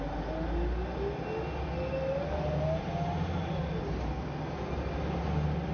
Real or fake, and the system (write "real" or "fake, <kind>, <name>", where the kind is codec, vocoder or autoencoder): real